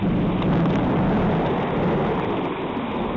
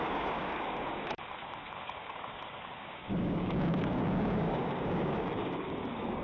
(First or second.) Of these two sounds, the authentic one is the first